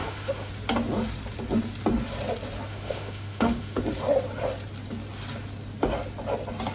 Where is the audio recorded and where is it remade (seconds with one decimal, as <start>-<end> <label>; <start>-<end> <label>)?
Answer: 0.0-0.5 remade; 0.5-2.7 recorded; 2.7-3.8 remade; 3.8-6.7 recorded